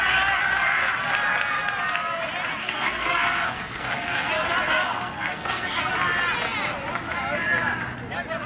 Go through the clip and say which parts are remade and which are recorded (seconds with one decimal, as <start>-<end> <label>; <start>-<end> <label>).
0.0-2.6 recorded; 2.6-4.3 remade; 4.3-4.7 recorded; 4.7-5.9 remade; 5.9-8.5 recorded